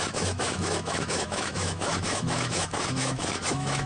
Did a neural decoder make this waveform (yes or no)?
yes